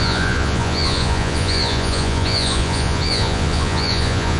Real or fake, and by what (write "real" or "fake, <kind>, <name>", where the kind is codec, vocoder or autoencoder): fake, vocoder, Vocos